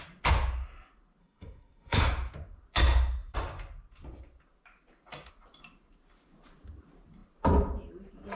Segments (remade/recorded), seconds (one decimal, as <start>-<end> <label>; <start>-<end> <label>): 0.0-1.2 recorded; 1.2-2.0 remade; 2.0-8.4 recorded